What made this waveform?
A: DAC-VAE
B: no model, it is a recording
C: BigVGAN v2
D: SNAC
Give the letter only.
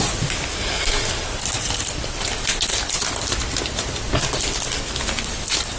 C